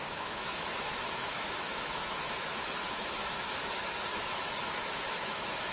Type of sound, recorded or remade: remade